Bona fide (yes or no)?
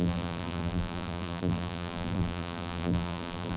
no